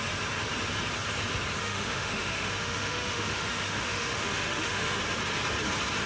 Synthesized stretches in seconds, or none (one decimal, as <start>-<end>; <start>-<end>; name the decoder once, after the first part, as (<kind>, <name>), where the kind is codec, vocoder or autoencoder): 1.6-5.0 (autoencoder, DAC-VAE)